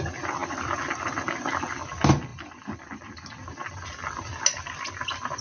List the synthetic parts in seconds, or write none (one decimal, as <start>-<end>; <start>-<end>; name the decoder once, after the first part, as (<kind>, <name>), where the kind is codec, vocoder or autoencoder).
none